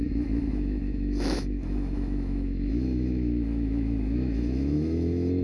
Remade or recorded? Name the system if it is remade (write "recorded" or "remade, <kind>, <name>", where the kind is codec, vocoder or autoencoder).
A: remade, autoencoder, DAC-VAE